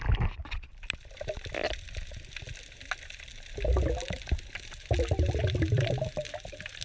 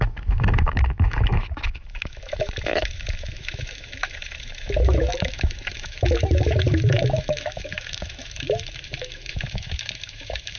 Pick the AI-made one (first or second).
second